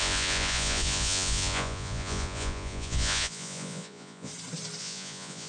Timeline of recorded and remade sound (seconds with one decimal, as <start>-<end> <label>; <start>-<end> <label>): 0.0-4.3 remade; 4.3-4.8 recorded; 4.8-5.5 remade